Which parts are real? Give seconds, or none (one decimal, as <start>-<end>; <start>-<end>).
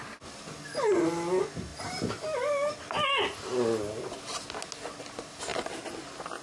0.0-6.4